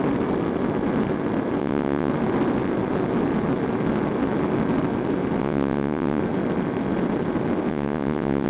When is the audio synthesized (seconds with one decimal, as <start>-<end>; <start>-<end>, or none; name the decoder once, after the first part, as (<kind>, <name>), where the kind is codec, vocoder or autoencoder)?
1.6-2.1 (vocoder, WaveNeXt); 5.4-6.2; 7.7-8.5